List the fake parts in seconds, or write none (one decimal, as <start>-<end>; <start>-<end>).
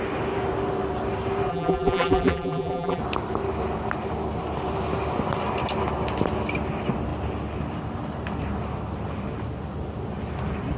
1.5-3.0